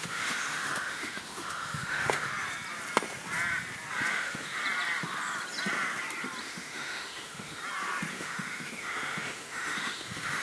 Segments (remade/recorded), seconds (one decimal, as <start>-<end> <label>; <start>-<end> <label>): 0.0-2.3 remade; 2.3-4.1 recorded; 4.1-4.6 remade; 4.6-6.4 recorded; 6.4-7.6 remade; 7.6-8.1 recorded; 8.1-10.4 remade